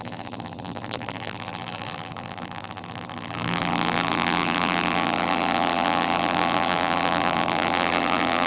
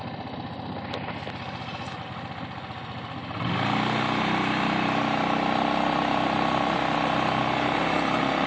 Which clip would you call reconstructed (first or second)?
first